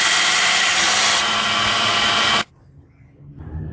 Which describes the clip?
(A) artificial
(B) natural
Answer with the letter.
B